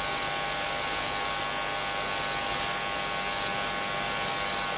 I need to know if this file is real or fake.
real